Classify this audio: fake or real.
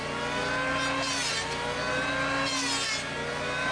real